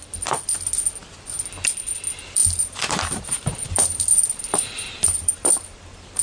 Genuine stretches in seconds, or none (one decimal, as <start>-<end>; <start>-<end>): 0.0-2.4